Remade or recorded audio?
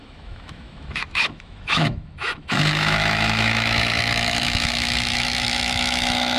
remade